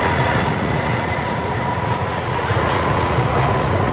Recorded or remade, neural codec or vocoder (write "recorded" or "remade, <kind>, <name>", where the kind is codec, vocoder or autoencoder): remade, vocoder, Vocos